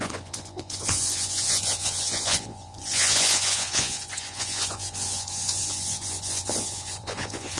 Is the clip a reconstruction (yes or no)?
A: yes